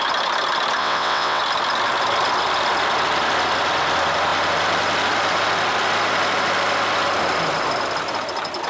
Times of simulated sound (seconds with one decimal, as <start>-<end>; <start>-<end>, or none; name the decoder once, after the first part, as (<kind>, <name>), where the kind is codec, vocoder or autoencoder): 0.8-1.4 (vocoder, WaveNeXt)